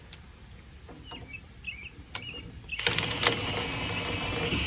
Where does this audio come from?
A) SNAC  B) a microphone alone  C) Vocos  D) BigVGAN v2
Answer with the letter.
B